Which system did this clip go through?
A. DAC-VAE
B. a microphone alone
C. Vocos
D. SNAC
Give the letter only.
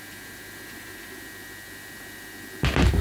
B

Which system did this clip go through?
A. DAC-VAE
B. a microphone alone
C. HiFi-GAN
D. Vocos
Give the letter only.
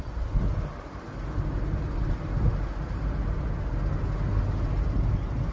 B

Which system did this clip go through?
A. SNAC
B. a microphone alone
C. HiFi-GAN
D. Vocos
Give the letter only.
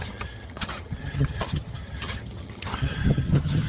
C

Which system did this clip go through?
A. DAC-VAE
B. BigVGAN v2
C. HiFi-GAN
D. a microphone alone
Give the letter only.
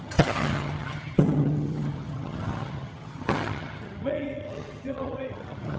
C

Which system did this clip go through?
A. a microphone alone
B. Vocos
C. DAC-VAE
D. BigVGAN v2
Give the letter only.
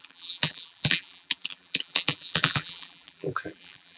D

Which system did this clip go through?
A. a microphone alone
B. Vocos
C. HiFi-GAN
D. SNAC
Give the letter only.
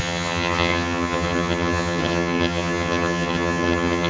C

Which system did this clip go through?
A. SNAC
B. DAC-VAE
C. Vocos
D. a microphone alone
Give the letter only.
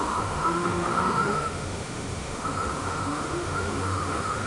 B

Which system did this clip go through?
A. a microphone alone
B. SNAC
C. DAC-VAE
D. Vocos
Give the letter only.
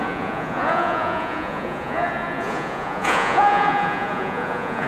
D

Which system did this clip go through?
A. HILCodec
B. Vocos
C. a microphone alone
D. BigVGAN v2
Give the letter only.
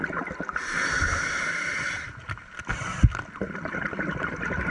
C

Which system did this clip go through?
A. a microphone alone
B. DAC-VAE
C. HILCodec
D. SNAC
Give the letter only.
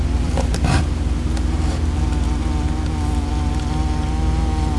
A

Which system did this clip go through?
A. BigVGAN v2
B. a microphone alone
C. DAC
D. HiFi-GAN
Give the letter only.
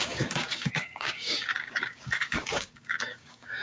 C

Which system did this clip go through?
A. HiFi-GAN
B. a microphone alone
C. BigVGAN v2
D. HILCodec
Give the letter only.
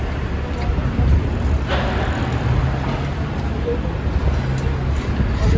B